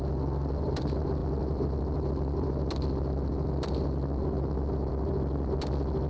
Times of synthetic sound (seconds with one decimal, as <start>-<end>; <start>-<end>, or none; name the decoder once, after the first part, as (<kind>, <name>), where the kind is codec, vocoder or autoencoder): none